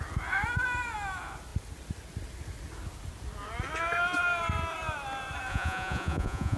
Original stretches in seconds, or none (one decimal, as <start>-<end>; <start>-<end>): 0.0-5.5